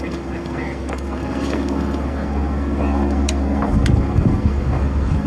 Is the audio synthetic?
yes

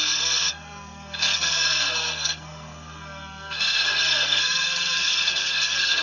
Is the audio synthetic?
yes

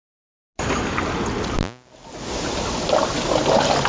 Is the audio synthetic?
no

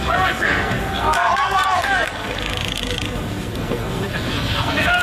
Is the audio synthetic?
yes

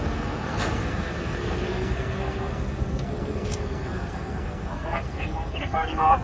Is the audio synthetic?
yes